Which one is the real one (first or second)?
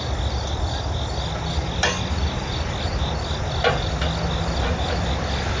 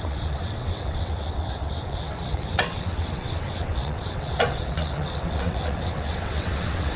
first